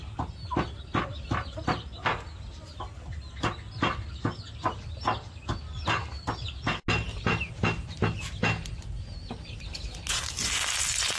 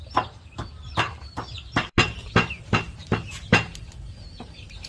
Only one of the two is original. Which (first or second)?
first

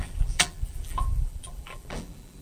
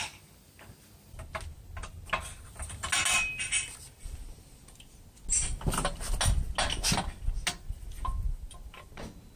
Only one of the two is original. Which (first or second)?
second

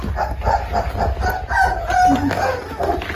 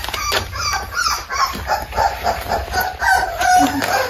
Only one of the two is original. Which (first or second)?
first